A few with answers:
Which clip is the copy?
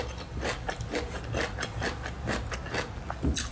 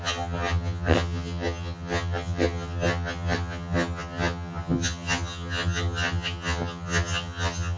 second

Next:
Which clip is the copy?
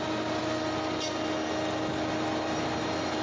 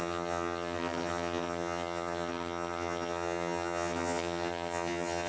second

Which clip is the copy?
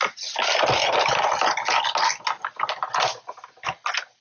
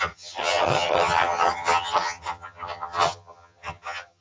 second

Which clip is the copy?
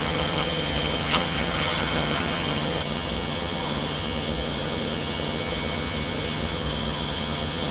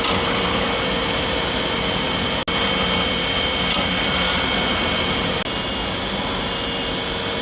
first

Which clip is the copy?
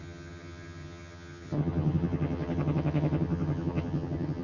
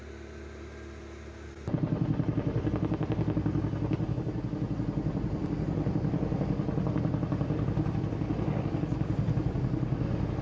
first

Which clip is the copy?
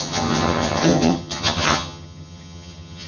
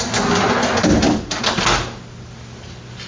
first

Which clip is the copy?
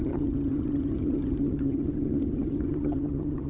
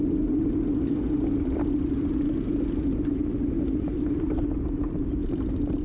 first